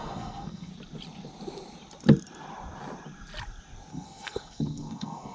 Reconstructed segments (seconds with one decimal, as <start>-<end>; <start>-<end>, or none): 0.0-0.7; 3.9-5.3